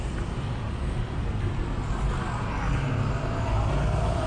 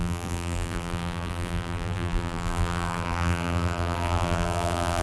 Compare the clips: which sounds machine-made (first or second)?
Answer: second